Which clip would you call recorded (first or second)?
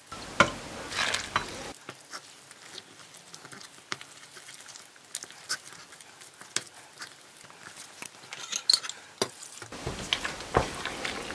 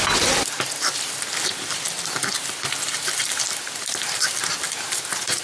first